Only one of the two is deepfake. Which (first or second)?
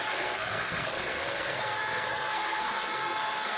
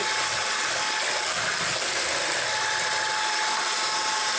first